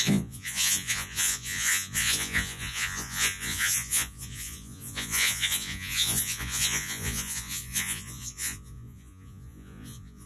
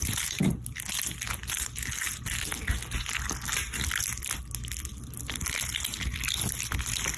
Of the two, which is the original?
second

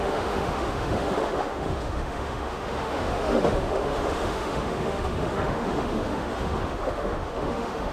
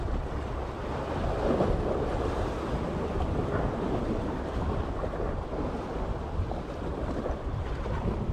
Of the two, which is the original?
second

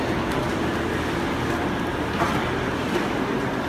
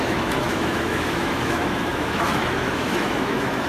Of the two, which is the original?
first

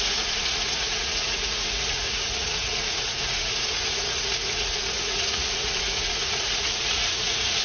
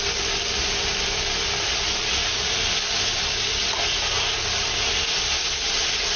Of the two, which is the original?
second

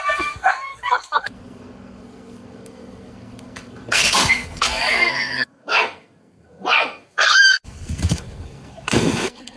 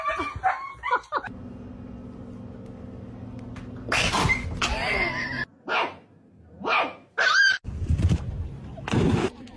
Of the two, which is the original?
second